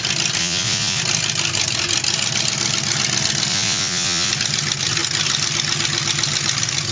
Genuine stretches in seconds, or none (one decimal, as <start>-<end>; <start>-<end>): 0.0-0.4; 1.0-3.5; 4.3-6.9

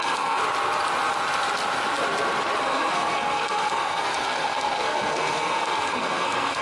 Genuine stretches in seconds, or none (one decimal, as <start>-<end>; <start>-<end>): 0.4-2.6

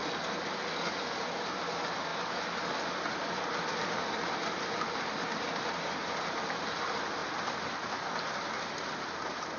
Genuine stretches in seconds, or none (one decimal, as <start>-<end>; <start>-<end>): 0.0-9.6

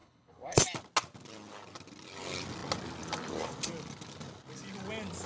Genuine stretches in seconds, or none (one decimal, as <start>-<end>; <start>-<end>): 0.6-5.3

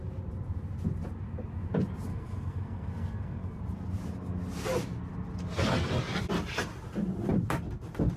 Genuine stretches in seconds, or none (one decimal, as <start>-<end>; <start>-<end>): 0.0-2.1; 3.6-8.2